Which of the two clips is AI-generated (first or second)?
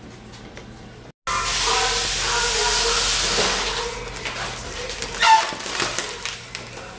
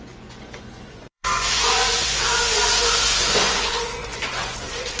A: second